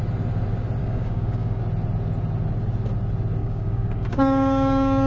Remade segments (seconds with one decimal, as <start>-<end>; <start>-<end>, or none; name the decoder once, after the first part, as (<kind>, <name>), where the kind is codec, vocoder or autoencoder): 0.8-1.6 (codec, DAC); 3.4-5.1